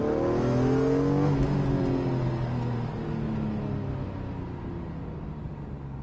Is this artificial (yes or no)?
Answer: no